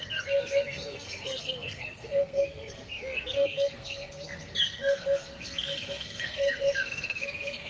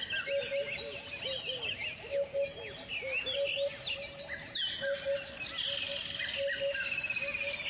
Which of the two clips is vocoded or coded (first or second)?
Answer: first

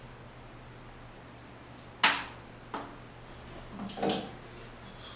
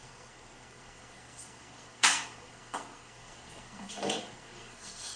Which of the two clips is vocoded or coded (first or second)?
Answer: second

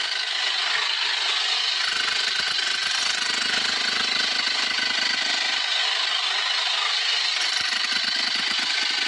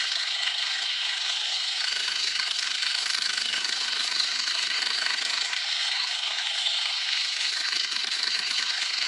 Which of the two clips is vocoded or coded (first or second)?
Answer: second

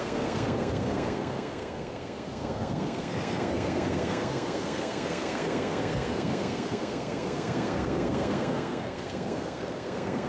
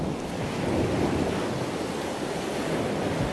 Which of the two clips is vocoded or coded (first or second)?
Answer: first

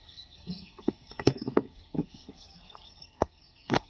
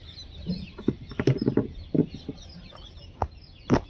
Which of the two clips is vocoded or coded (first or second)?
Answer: first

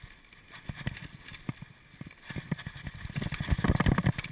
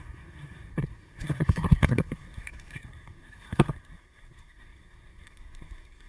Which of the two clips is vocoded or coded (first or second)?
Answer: second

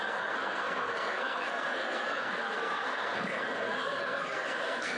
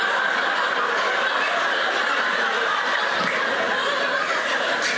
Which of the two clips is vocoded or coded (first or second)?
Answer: first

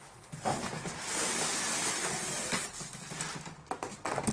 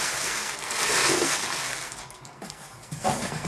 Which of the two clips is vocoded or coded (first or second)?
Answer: second